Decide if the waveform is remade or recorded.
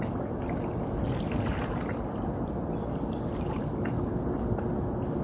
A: recorded